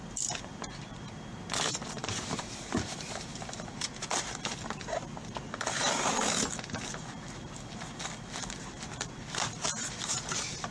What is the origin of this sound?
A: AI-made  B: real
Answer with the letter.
B